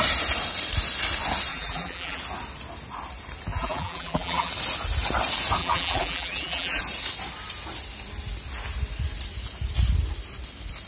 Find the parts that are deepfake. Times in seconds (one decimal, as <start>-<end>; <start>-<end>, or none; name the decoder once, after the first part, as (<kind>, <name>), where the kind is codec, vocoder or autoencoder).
1.5-2.2 (vocoder, BigVGAN v2); 3.5-4.5; 5.6-6.8